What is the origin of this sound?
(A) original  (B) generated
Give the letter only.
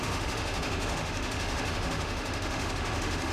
B